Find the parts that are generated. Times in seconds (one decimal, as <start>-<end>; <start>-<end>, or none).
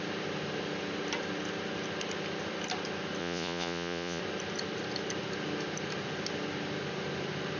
3.2-4.2